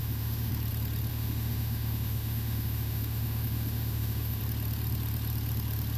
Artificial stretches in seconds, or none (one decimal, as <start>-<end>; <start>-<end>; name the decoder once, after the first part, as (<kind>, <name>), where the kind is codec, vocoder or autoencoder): 0.0-0.5 (autoencoder, DAC-VAE); 1.1-4.4